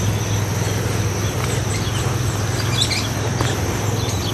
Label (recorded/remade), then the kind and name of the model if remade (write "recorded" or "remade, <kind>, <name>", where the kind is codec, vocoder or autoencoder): recorded